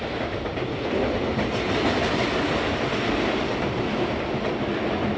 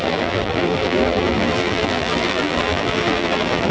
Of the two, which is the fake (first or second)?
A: second